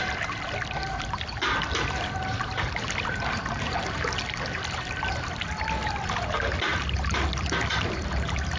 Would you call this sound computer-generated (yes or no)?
no